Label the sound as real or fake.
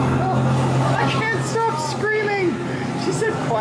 real